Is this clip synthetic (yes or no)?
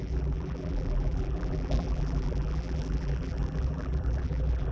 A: yes